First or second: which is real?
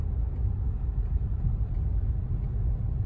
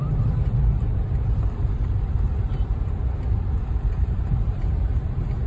first